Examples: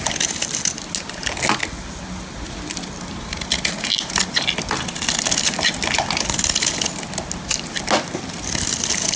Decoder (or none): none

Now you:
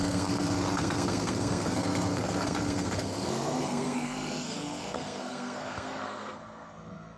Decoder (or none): codec, SNAC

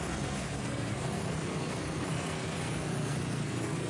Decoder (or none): codec, SNAC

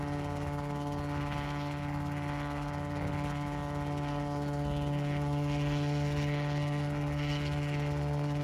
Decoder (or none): codec, SNAC